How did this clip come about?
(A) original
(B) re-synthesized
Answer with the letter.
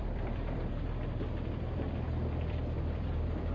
B